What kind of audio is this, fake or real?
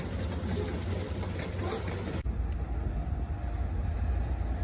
real